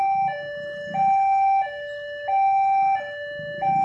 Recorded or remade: recorded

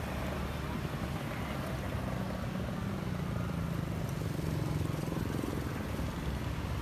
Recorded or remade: recorded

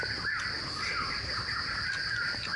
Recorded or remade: recorded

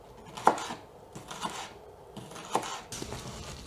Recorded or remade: recorded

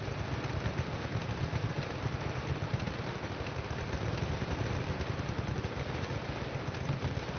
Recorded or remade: remade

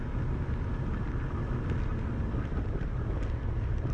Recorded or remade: remade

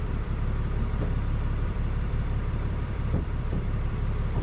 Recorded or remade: remade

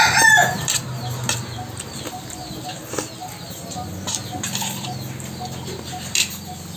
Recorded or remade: recorded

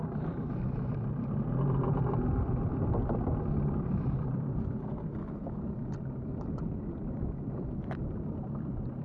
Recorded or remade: remade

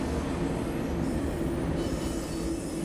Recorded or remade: recorded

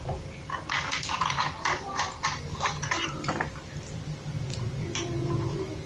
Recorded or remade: remade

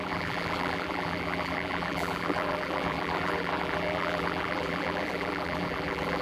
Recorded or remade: remade